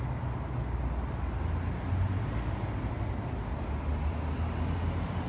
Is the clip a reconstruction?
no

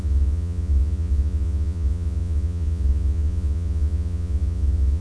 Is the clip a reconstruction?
yes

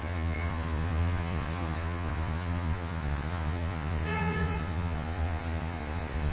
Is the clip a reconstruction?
yes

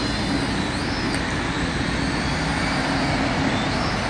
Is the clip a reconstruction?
no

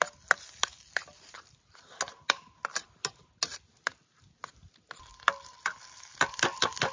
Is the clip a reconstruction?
no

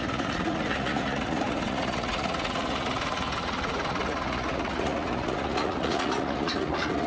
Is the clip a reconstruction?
yes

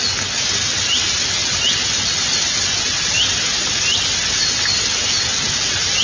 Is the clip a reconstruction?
no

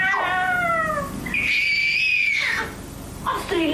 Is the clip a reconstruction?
no